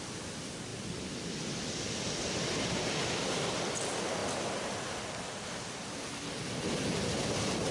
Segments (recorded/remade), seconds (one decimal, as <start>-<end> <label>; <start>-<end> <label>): 0.0-7.7 recorded